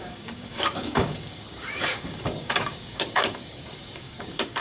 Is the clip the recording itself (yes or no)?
no